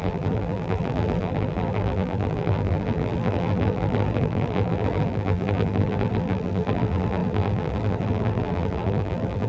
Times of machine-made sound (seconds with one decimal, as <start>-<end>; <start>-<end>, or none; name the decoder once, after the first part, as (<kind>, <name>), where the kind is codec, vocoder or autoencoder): 0.0-9.5 (vocoder, BigVGAN v2)